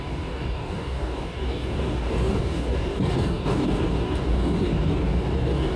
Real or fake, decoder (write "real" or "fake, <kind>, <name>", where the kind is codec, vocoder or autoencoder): fake, codec, DAC